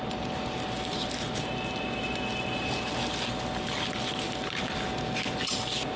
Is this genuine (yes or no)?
yes